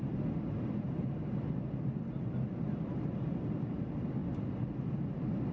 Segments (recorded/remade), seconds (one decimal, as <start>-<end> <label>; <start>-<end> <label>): 0.0-5.5 recorded

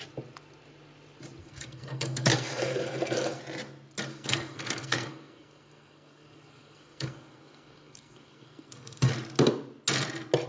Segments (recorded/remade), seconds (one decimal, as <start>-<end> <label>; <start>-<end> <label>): 0.0-1.4 recorded; 1.4-3.4 remade; 3.4-4.1 recorded; 4.1-9.1 remade; 9.1-10.5 recorded

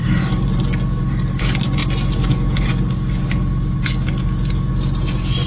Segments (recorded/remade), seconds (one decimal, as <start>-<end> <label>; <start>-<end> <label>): 0.0-5.5 recorded